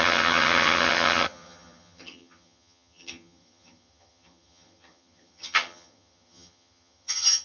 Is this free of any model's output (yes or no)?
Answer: no